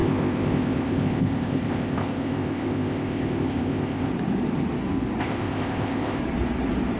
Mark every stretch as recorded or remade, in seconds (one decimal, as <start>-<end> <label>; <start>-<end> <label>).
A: 0.0-4.1 remade; 4.1-5.2 recorded; 5.2-6.2 remade; 6.2-7.0 recorded